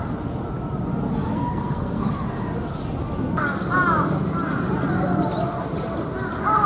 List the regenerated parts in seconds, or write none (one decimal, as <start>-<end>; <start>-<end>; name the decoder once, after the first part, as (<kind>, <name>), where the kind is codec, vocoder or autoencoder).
1.3-2.1 (codec, SNAC)